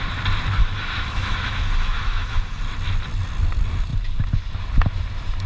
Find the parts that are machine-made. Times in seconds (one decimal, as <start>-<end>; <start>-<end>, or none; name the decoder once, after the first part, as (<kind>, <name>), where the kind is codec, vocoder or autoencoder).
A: 0.6-2.6 (autoencoder, DAC-VAE)